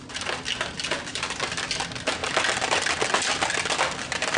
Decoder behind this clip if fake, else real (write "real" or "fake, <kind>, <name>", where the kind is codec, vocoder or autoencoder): real